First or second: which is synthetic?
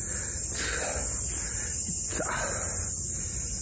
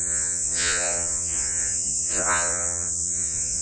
second